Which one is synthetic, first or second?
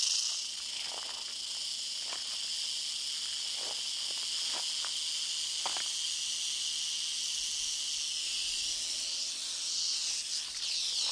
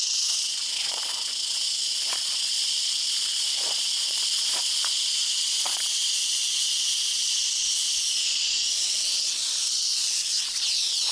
second